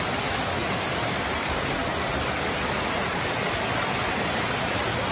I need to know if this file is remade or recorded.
recorded